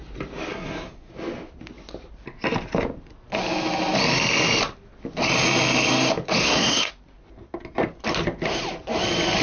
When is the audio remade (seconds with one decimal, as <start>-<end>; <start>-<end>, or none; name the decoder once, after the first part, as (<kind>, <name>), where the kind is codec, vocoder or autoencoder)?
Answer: 0.5-1.1 (codec, SNAC); 6.4-6.9